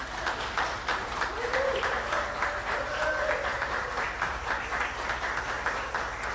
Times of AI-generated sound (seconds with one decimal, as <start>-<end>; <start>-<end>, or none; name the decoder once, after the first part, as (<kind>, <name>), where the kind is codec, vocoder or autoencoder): 0.9-3.1 (vocoder, BigVGAN v2); 3.5-4.4